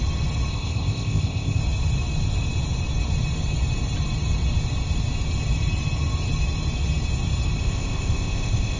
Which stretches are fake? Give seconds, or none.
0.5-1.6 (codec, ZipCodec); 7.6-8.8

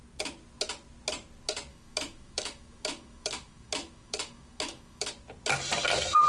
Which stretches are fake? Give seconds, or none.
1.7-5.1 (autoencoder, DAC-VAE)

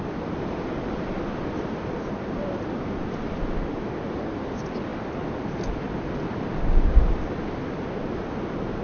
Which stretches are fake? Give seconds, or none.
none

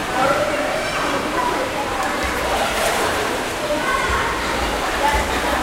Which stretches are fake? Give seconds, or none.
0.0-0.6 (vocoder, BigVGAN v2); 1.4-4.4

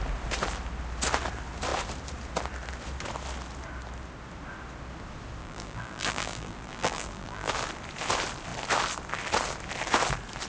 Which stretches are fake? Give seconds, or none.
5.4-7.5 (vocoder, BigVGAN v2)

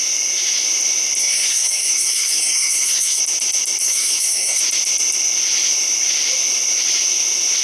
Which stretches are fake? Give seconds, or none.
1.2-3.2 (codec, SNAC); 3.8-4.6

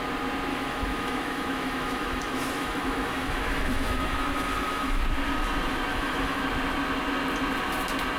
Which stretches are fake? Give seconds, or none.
0.5-5.0 (autoencoder, DAC-VAE); 5.9-6.4